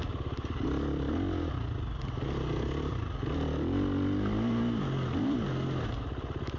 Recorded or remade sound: recorded